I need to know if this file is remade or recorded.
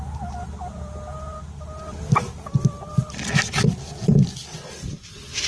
recorded